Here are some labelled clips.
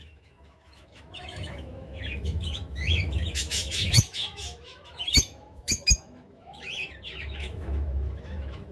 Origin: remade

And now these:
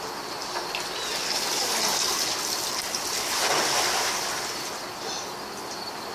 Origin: recorded